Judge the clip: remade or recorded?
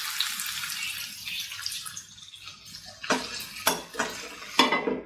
recorded